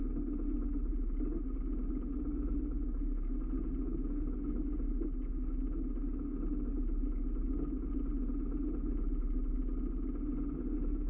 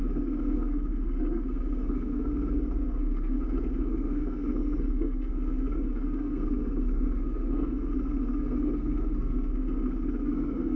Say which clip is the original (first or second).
first